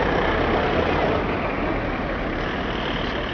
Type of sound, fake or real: real